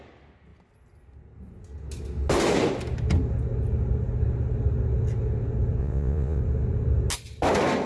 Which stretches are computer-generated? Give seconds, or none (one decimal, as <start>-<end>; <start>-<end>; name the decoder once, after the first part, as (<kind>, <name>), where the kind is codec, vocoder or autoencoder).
5.8-6.4 (vocoder, Vocos)